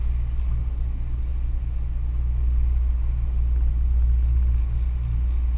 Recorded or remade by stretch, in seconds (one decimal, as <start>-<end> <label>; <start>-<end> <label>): 0.0-5.6 recorded